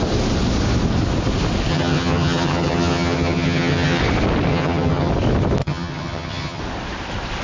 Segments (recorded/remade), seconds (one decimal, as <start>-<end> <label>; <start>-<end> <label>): 0.0-1.7 recorded; 1.7-4.0 remade; 4.0-4.5 recorded; 4.5-5.1 remade; 5.1-5.6 recorded; 5.6-6.6 remade; 6.6-7.4 recorded